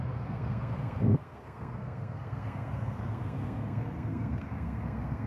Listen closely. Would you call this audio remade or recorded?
remade